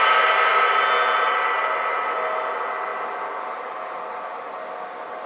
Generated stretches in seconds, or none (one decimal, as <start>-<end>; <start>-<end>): none